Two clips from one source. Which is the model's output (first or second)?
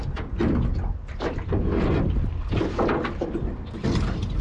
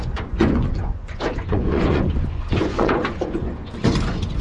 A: second